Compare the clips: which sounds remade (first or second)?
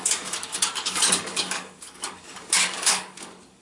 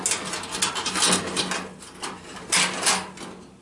first